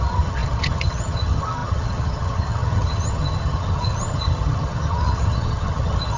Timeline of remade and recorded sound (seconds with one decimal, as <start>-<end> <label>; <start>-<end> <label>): 0.0-6.2 remade